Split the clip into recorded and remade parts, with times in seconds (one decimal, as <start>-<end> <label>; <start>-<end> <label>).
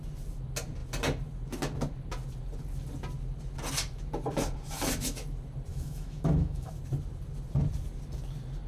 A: 0.0-5.7 recorded; 5.7-6.7 remade; 6.7-8.7 recorded